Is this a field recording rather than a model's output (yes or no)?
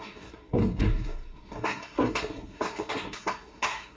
no